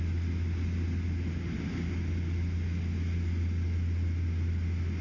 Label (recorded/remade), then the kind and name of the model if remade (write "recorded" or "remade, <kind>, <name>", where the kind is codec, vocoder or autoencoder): recorded